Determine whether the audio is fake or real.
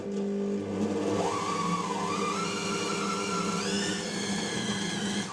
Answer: real